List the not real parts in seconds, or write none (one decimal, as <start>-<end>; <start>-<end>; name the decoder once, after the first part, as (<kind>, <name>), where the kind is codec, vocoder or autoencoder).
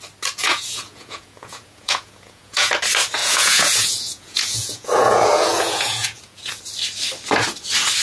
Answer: 0.4-2.7 (vocoder, Vocos); 3.2-6.6